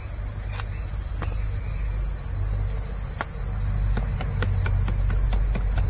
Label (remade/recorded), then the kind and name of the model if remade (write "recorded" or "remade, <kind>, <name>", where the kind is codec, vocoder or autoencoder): recorded